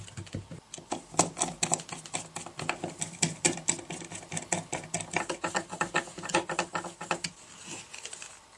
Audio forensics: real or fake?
real